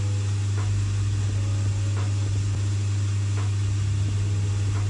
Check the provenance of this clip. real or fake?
real